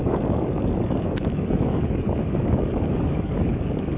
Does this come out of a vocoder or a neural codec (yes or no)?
yes